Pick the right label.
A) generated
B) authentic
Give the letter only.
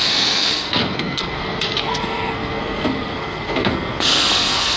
A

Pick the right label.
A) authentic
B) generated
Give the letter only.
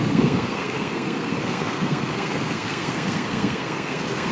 B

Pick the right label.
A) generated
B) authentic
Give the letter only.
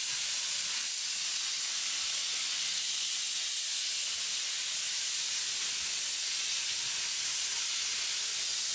B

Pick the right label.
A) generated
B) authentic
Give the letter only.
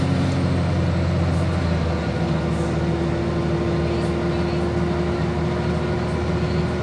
B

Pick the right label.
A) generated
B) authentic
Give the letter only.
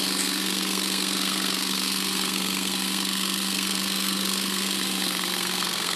A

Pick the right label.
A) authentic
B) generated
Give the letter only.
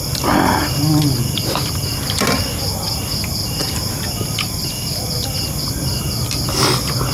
A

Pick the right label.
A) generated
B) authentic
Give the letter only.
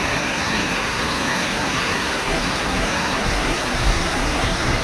A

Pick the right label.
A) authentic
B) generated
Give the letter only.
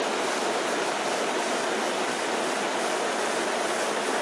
A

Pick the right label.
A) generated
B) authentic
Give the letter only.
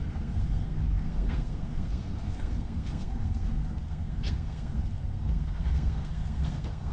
A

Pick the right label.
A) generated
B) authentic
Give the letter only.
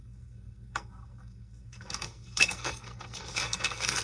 A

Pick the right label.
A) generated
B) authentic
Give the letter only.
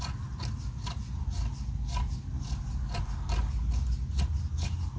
B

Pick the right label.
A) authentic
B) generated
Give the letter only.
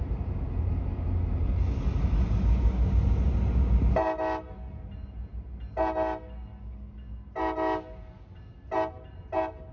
A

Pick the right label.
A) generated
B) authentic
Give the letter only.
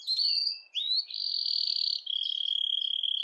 B